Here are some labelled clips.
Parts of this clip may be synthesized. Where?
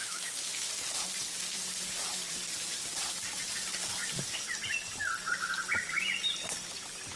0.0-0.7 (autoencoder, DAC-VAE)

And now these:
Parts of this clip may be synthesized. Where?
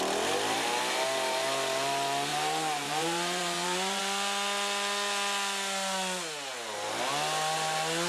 2.3-4.0 (vocoder, BigVGAN v2)